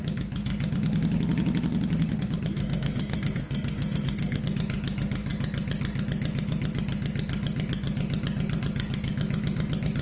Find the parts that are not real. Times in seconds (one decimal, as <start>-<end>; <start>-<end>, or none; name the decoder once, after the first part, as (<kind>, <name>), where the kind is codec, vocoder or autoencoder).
2.5-4.4 (codec, SNAC)